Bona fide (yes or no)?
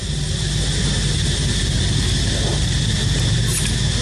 yes